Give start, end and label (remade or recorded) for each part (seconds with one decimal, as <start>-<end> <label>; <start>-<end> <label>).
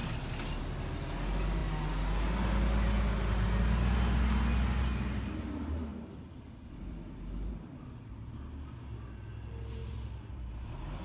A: 0.0-5.9 recorded; 5.9-7.5 remade; 7.5-9.8 recorded; 9.8-10.5 remade; 10.5-11.0 recorded